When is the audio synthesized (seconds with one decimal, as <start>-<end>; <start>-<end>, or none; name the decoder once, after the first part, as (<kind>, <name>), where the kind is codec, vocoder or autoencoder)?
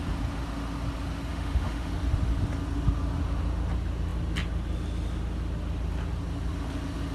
1.3-1.9 (autoencoder, DAC-VAE)